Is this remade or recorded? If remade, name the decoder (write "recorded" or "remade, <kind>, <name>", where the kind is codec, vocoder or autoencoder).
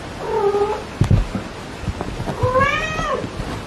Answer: recorded